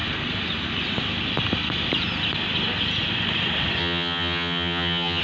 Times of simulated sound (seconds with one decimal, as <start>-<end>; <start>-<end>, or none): 3.8-5.2